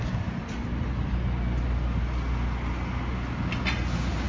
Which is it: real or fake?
real